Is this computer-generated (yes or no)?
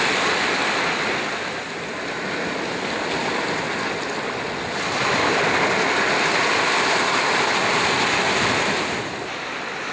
no